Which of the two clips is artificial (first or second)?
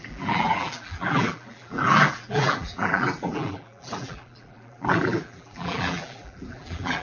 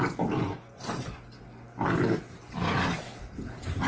first